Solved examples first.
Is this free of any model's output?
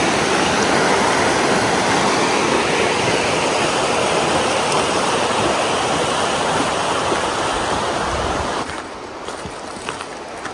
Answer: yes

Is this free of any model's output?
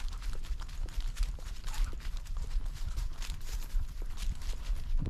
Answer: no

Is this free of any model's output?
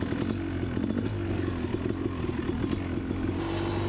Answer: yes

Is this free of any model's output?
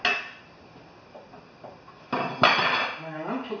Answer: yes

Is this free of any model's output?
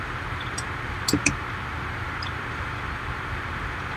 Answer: no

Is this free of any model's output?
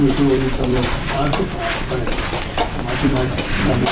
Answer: no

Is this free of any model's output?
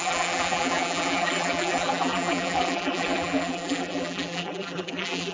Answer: no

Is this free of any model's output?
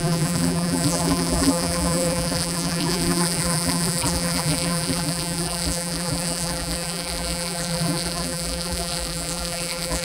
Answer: no